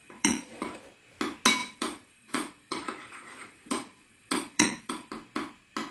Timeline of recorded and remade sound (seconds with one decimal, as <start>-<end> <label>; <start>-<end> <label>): 0.0-0.8 remade; 0.8-1.6 recorded; 1.6-5.1 remade; 5.1-5.9 recorded